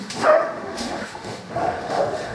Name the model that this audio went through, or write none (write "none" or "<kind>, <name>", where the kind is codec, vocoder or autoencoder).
autoencoder, DAC-VAE